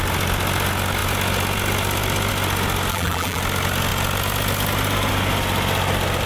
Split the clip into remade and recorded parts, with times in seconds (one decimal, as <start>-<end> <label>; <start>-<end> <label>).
0.0-2.9 recorded; 2.9-3.4 remade; 3.4-6.3 recorded